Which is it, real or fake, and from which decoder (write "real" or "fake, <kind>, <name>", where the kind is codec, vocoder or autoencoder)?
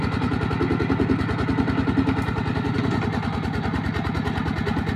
real